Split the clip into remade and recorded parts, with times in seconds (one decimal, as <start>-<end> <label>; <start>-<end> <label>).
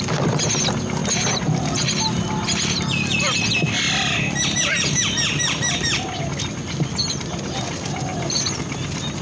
0.0-9.2 recorded